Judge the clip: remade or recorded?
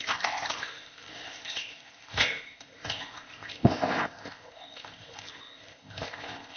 remade